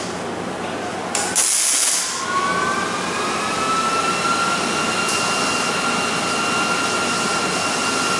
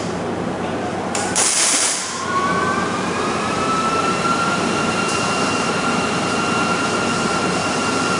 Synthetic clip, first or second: second